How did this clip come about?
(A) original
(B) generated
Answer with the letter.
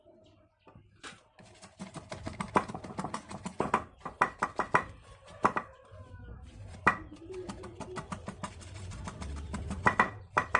A